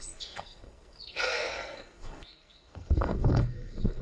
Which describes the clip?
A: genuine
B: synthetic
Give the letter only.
B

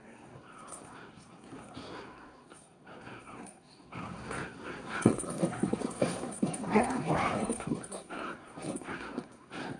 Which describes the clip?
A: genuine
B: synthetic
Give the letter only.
B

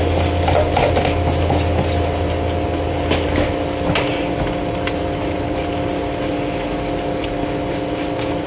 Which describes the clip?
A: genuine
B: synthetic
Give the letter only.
A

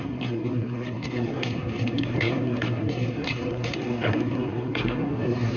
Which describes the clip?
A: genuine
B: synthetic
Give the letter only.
B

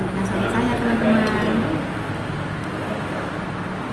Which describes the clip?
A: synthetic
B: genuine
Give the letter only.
B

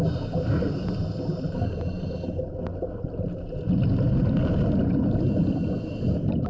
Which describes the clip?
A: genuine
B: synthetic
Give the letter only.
A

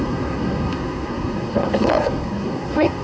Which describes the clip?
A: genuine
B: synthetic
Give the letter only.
B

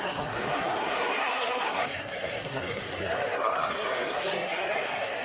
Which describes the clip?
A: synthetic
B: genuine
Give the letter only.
A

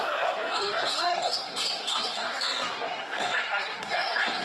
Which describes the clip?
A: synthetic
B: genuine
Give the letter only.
A